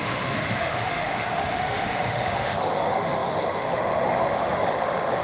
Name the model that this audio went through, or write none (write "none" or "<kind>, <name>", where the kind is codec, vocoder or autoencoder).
autoencoder, DAC-VAE